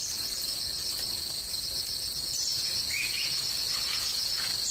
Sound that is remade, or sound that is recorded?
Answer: remade